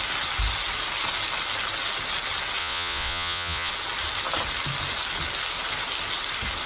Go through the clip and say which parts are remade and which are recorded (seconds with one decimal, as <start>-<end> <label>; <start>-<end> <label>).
0.0-2.6 recorded; 2.6-3.7 remade; 3.7-6.7 recorded